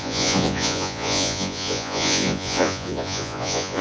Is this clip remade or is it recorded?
remade